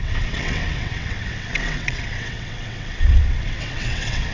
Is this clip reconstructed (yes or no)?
yes